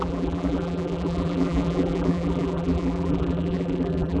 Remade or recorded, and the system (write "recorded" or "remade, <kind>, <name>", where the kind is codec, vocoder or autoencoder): remade, vocoder, BigVGAN v2